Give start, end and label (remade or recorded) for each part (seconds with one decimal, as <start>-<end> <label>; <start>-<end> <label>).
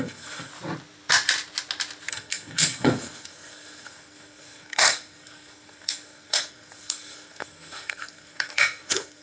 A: 0.0-0.5 remade; 0.5-2.1 recorded; 2.1-9.2 remade